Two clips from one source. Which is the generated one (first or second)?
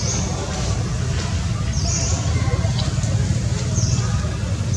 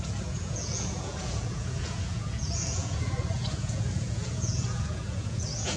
second